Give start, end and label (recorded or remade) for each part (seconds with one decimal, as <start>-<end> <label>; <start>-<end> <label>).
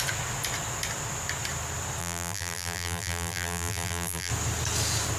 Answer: 0.0-2.0 recorded; 2.0-4.3 remade; 4.3-5.2 recorded